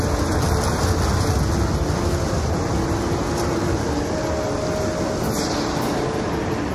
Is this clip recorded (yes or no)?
yes